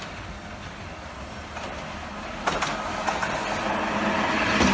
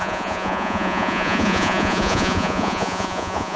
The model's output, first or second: second